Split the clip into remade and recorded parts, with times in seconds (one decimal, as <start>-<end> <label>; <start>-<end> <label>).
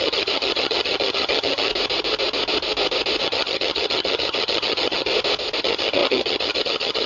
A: 0.0-1.7 remade; 1.7-3.2 recorded; 3.2-5.1 remade; 5.1-5.6 recorded; 5.6-7.1 remade